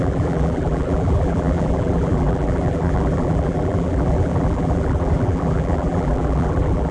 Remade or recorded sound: remade